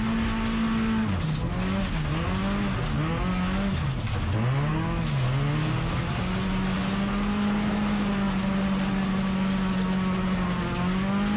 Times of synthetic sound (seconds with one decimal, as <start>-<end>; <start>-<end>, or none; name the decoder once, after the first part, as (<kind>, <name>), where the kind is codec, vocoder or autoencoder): none